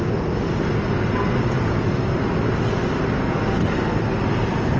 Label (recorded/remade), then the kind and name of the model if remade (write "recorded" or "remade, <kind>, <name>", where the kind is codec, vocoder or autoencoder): recorded